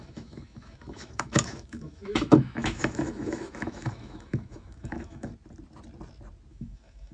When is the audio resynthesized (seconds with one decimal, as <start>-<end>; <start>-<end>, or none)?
0.0-5.3; 6.5-7.1